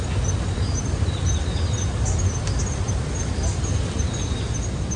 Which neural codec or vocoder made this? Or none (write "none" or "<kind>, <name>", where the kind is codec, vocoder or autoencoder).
none